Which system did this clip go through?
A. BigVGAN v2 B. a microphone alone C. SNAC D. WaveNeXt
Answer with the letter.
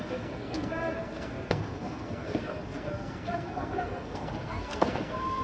C